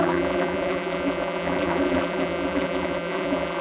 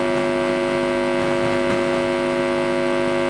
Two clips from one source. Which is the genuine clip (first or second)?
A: second